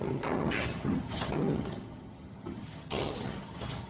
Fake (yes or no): yes